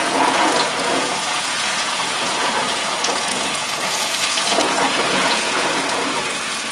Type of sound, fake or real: fake